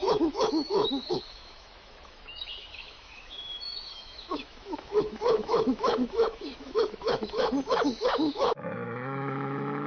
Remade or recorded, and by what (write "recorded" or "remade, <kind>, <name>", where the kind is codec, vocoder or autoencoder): remade, autoencoder, DAC-VAE